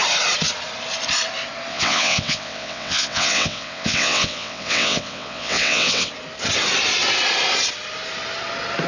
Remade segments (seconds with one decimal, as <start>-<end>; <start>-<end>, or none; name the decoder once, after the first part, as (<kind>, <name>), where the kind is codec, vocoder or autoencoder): 1.7-6.1 (vocoder, WaveNeXt)